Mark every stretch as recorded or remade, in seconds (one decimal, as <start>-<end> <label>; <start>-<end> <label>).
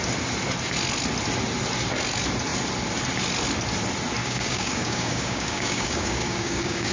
0.0-4.2 recorded; 4.2-6.9 remade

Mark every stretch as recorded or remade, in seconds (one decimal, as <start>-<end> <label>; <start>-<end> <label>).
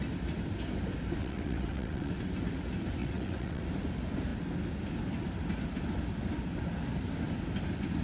0.0-1.2 recorded; 1.2-2.1 remade; 2.1-3.0 recorded; 3.0-3.6 remade; 3.6-8.0 recorded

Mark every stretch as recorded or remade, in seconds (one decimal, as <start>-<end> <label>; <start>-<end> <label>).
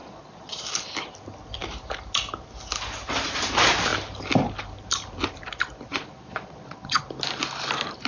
0.0-0.6 remade; 0.6-5.9 recorded; 5.9-7.0 remade; 7.0-8.1 recorded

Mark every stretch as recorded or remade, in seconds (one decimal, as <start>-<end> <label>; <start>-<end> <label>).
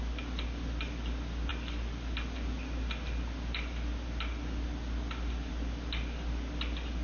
0.0-7.0 recorded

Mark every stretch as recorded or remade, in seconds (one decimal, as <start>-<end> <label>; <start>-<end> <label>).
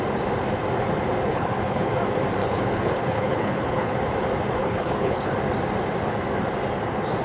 0.0-1.3 recorded; 1.3-1.9 remade; 1.9-2.4 recorded; 2.4-4.0 remade; 4.0-4.6 recorded; 4.6-5.3 remade; 5.3-7.2 recorded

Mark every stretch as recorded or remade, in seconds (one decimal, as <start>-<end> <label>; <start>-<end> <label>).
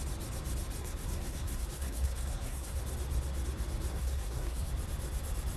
0.0-0.8 recorded; 0.8-2.8 remade; 2.8-3.9 recorded; 3.9-4.7 remade; 4.7-5.6 recorded